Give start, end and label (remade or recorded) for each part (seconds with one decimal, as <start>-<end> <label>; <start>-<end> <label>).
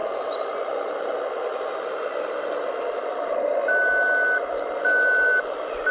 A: 0.0-5.9 recorded